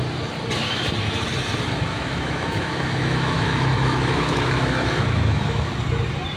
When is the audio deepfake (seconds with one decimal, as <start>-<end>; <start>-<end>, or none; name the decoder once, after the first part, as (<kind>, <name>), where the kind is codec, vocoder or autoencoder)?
1.9-5.7 (autoencoder, DAC-VAE)